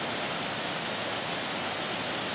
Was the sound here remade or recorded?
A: recorded